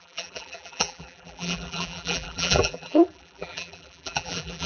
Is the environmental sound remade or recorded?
remade